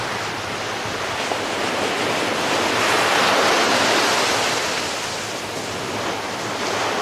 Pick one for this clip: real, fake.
real